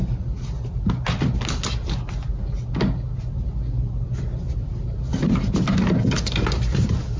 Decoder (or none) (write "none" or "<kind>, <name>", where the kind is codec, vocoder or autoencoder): none